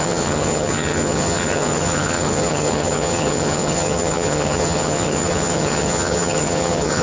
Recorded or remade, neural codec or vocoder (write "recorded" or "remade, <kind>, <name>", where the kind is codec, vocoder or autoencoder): remade, vocoder, HiFi-GAN